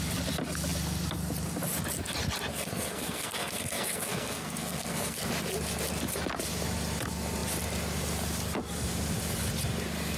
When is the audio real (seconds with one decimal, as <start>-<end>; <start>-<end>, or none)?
0.0-2.5; 5.3-10.2